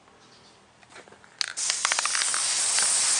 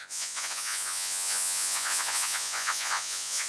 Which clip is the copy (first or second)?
second